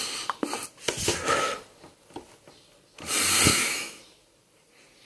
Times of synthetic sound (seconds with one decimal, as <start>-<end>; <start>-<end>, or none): 3.5-4.0